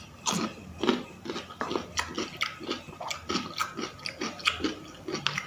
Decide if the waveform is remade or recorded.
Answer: recorded